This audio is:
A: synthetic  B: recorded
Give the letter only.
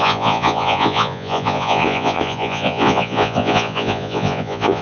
A